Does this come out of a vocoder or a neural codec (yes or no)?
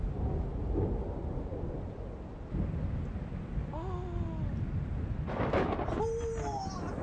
no